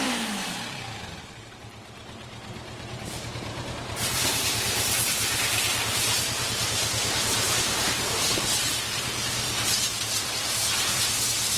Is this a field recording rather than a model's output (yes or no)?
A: no